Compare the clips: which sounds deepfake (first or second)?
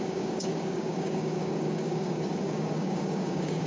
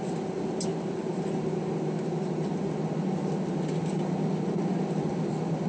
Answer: first